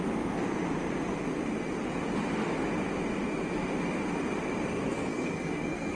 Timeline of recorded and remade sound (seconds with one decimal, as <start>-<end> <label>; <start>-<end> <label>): 0.0-4.7 recorded; 4.7-6.0 remade